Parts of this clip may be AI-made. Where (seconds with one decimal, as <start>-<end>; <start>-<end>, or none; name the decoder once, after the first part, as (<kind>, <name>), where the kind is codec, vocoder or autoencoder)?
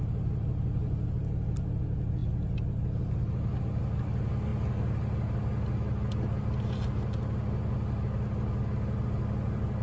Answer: none